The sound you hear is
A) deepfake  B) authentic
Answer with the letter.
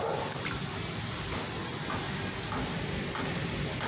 B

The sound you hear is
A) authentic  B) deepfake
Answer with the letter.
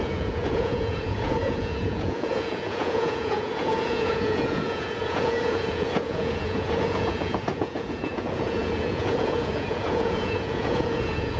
B